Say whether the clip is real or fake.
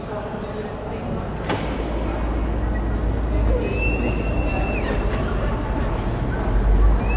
real